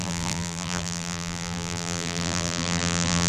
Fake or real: fake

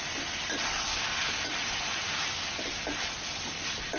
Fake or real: real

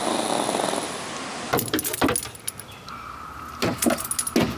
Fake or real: real